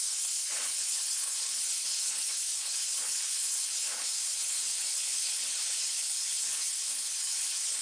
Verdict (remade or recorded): remade